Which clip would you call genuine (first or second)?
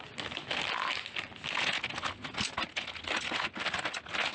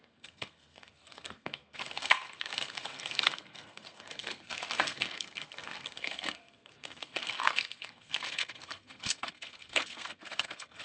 first